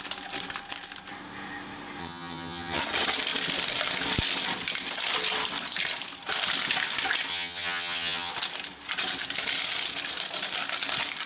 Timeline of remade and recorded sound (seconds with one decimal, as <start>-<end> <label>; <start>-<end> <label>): 0.0-2.0 recorded; 2.0-2.8 remade; 2.8-7.3 recorded; 7.3-8.3 remade; 8.3-11.3 recorded